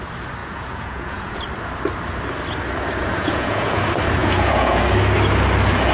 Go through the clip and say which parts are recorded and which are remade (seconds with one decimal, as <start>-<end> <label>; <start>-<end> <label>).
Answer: 0.0-0.4 recorded; 0.4-1.4 remade; 1.4-3.0 recorded; 3.0-3.8 remade; 3.8-4.2 recorded; 4.2-4.8 remade; 4.8-5.9 recorded